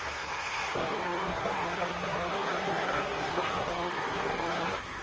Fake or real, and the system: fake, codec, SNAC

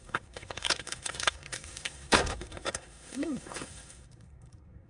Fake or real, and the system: fake, codec, SNAC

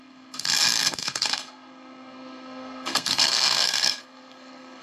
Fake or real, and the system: fake, codec, SNAC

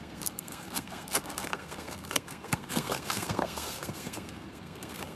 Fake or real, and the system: fake, codec, SNAC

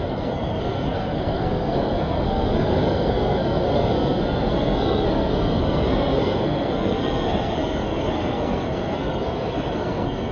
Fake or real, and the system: fake, codec, SNAC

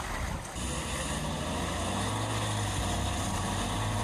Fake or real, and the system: real